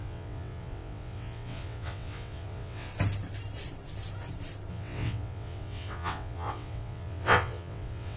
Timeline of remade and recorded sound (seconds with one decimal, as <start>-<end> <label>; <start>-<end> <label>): 0.0-2.9 remade; 2.9-4.7 recorded; 4.7-8.2 remade